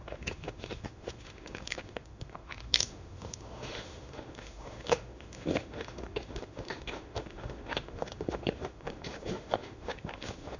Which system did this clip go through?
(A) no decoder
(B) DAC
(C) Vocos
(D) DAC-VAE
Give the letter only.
D